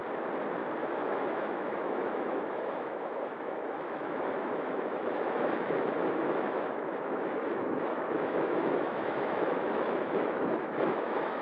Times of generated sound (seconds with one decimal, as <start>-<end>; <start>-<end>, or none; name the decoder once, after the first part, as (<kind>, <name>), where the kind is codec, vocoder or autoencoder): 0.8-11.4 (autoencoder, DAC-VAE)